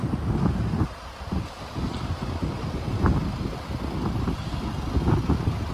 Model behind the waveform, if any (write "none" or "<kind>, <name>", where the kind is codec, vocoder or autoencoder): none